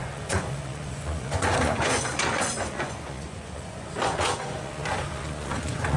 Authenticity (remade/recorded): remade